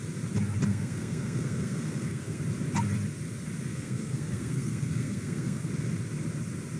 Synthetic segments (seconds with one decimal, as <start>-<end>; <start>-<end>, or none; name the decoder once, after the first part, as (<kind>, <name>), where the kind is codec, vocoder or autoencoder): 0.7-2.4 (codec, SNAC); 3.7-5.7

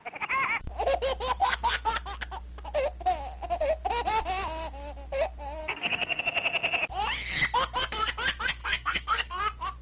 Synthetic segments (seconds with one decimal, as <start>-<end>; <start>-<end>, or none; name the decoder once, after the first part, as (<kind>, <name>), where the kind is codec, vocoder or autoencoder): 1.4-1.9 (codec, SNAC); 5.6-6.2; 8.6-9.4